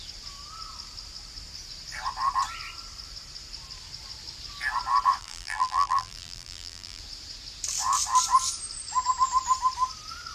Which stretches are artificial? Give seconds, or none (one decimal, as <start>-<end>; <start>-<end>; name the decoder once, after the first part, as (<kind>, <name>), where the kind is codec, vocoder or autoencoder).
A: 5.2-7.0 (vocoder, BigVGAN v2)